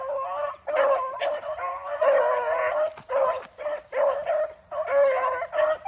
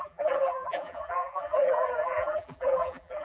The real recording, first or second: first